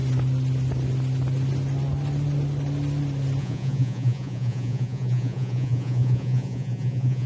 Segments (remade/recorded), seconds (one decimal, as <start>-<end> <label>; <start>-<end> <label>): 0.0-3.4 recorded; 3.4-7.3 remade